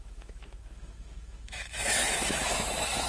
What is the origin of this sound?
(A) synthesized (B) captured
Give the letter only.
A